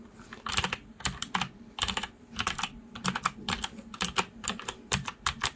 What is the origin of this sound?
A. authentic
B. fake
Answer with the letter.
B